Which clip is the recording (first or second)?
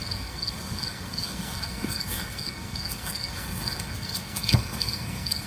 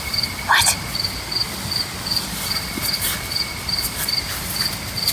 second